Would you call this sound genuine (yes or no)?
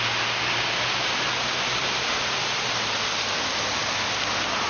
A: yes